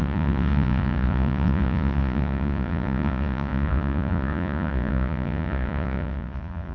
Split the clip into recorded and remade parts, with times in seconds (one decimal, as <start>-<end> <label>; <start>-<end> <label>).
0.0-6.7 remade